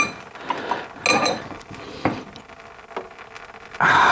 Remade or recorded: recorded